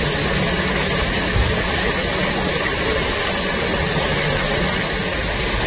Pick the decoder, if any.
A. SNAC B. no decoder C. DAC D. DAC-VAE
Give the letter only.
B